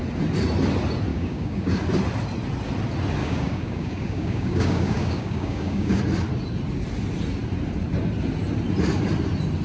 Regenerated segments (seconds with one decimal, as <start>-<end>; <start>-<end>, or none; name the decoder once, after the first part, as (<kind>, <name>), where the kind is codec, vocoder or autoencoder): 1.1-1.8 (codec, DAC); 3.2-6.0